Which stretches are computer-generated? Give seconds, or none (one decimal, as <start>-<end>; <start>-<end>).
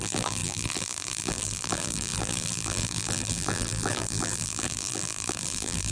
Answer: 0.0-5.9